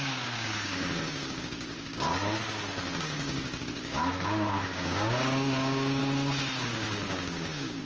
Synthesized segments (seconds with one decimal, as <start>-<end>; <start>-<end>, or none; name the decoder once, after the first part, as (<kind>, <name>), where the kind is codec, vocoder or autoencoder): 0.0-2.1 (codec, DAC); 3.0-6.0; 6.6-7.9